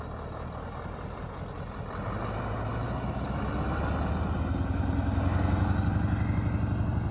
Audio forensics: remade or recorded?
recorded